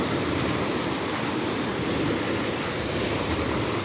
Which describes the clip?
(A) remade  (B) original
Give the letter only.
B